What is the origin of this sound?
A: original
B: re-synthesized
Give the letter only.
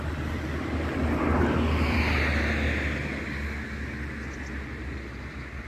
A